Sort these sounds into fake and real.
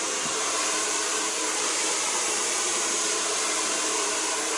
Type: fake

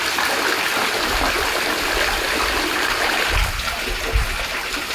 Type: real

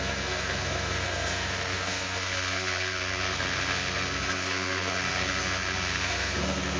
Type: fake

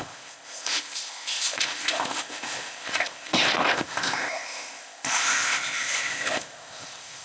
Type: fake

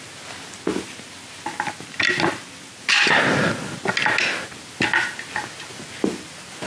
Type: real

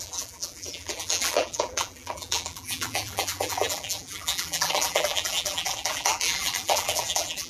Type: fake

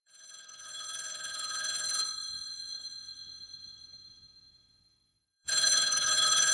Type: fake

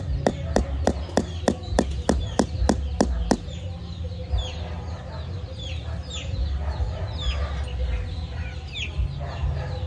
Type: real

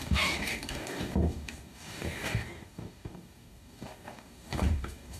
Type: fake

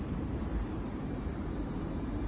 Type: real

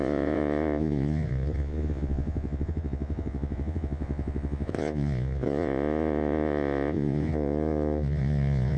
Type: fake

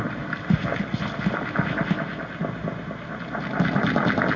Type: real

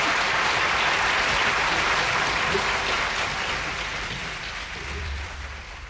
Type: fake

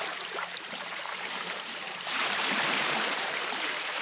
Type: fake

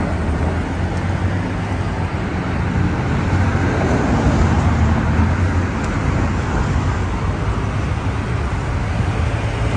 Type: real